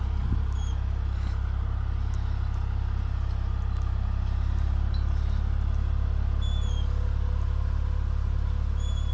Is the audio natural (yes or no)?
yes